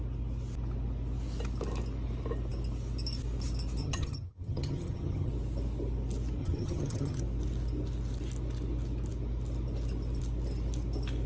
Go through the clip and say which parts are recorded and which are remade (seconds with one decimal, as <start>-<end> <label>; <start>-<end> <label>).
0.0-3.8 recorded; 3.8-5.3 remade; 5.3-6.4 recorded; 6.4-7.2 remade; 7.2-11.3 recorded